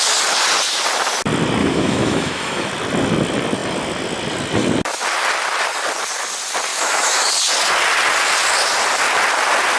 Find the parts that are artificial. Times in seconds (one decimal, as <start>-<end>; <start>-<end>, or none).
1.6-2.7; 6.7-7.3